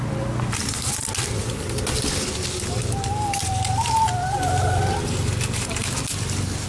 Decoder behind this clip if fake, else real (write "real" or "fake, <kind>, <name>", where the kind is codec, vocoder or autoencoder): real